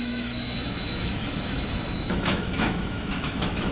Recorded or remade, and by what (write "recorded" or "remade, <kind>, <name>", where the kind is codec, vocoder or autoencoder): remade, autoencoder, DAC-VAE